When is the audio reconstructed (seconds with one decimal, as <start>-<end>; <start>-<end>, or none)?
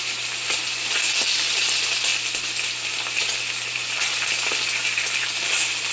none